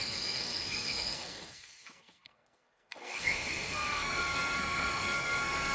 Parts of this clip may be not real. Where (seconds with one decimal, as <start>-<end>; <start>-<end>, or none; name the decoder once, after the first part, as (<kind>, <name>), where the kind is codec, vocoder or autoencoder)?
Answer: 0.0-5.7 (codec, SNAC)